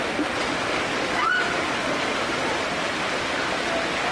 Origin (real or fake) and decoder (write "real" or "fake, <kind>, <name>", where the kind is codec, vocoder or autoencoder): real